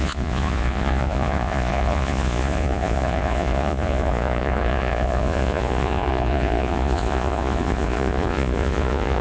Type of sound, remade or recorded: remade